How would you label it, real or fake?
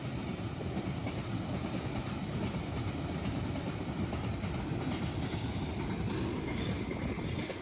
fake